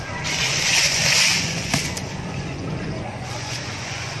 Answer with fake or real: fake